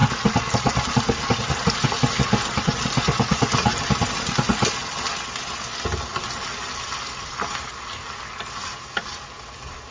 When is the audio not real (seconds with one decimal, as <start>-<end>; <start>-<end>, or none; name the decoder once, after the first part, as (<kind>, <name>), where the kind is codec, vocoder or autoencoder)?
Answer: none